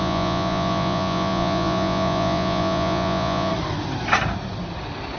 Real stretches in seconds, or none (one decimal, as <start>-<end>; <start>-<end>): 3.5-5.2